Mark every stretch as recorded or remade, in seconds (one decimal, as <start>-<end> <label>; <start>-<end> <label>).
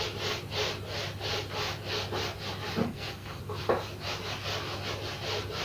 0.0-2.8 recorded; 2.8-3.4 remade; 3.4-5.6 recorded